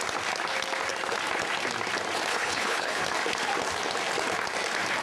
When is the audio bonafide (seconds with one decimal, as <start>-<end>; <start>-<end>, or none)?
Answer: 0.0-2.3; 3.0-5.0